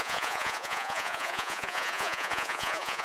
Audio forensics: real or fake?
fake